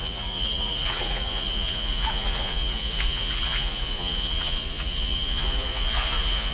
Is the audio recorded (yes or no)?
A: no